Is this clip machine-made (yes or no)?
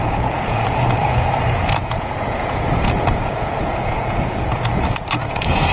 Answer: yes